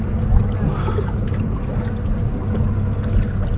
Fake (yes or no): no